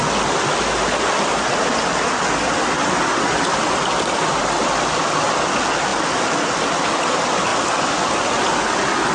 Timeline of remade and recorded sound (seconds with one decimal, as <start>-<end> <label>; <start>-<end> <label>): 0.0-9.1 recorded